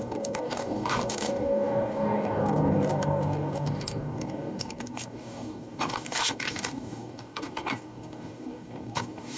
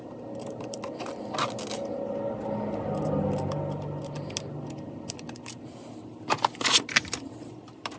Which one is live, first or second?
second